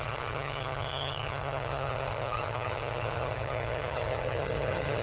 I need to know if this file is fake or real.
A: fake